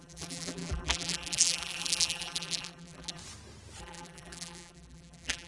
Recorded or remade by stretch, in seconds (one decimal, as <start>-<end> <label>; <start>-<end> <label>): 0.0-3.2 remade; 3.2-3.8 recorded; 3.8-5.5 remade